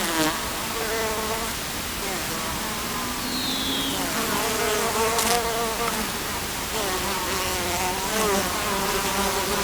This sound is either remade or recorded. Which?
recorded